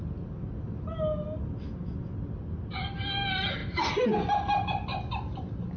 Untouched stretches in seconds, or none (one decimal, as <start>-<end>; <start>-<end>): 0.0-5.8